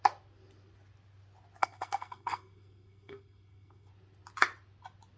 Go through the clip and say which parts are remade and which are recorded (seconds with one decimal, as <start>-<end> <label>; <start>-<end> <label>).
0.0-1.6 recorded; 1.6-3.9 remade; 3.9-5.2 recorded